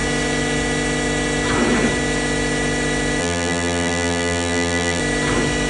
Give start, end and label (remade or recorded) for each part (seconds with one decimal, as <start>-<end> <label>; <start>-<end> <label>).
0.0-3.2 recorded; 3.2-5.0 remade; 5.0-5.7 recorded